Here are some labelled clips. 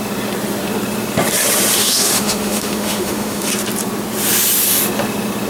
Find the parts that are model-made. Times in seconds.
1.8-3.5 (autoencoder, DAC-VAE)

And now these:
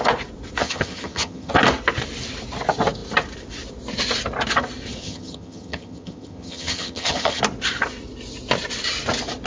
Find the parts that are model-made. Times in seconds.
0.6-1.5 (vocoder, HiFi-GAN); 5.0-7.4

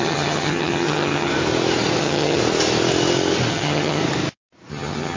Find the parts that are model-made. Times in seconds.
0.0-1.3 (vocoder, HiFi-GAN); 2.0-2.4; 3.5-4.0; 4.7-5.2

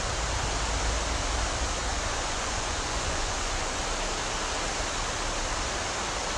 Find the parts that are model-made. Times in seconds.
1.9-3.8 (vocoder, Vocos)